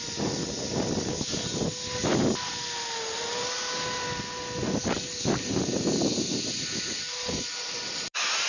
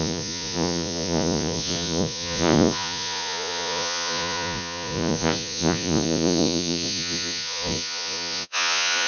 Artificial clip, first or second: second